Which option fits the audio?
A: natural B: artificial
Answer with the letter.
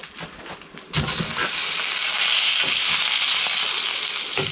A